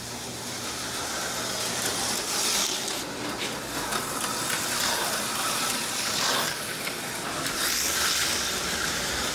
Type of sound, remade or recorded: recorded